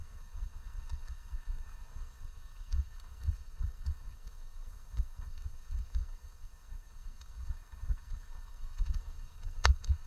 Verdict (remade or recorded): remade